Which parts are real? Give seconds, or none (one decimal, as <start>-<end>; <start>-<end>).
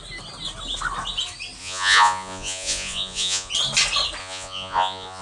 0.0-1.6; 3.5-4.2